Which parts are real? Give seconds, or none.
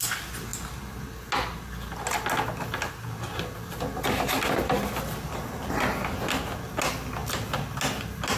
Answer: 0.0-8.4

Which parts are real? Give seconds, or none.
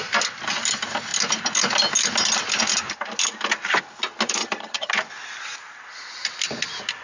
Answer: 0.0-4.4; 4.9-7.0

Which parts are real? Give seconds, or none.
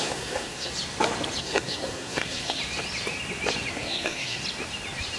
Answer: 0.7-1.4; 2.6-3.7; 4.4-5.2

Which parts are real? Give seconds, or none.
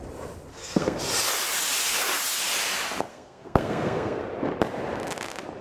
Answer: 0.0-0.5; 1.0-3.1; 4.2-5.6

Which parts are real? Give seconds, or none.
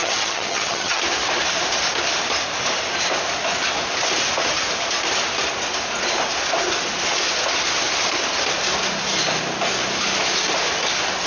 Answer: 1.0-11.3